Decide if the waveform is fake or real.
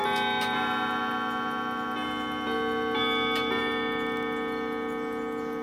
real